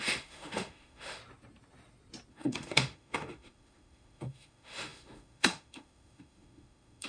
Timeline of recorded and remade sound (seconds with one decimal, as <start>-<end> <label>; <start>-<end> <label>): 0.0-1.2 remade; 1.2-2.3 recorded; 2.3-7.1 remade